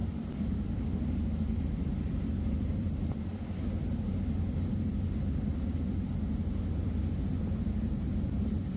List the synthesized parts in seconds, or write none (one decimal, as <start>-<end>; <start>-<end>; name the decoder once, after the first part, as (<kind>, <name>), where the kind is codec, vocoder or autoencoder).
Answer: 0.5-3.3 (vocoder, BigVGAN v2); 5.5-8.8